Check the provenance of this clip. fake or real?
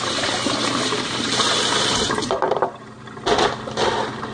real